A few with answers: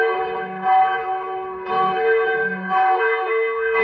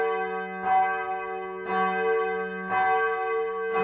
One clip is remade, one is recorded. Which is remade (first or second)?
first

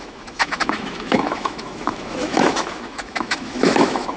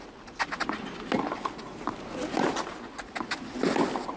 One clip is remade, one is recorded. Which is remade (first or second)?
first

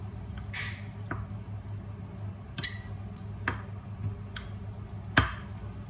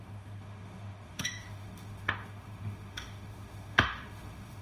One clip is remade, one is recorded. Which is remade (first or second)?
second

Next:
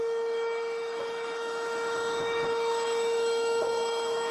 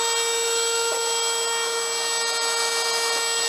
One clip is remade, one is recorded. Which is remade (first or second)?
first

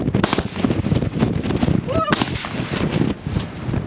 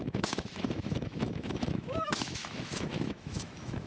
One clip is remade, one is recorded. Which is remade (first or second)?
second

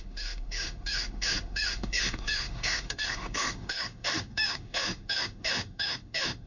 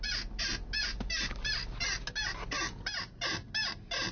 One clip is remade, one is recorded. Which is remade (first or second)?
first